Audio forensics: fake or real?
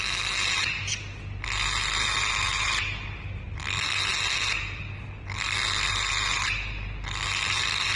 real